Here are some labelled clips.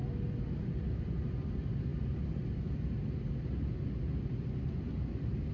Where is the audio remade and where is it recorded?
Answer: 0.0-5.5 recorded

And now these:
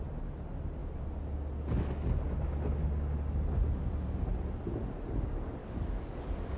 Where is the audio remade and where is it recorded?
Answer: 0.0-5.6 recorded; 5.6-6.6 remade

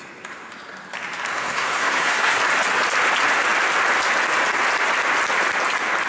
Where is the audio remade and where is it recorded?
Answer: 0.0-1.3 recorded; 1.3-2.4 remade; 2.4-6.1 recorded

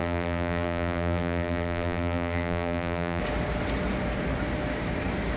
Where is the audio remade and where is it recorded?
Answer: 0.0-3.2 remade; 3.2-5.4 recorded